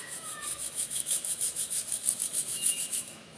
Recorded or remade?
remade